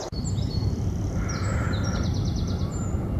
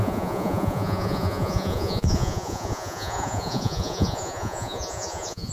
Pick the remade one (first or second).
second